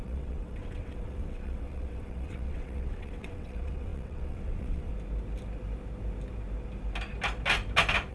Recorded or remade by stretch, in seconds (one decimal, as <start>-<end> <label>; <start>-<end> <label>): 0.0-4.9 remade; 4.9-8.1 recorded